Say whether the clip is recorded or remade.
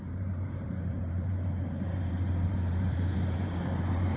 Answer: remade